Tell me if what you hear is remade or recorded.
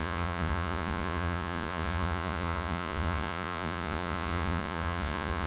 remade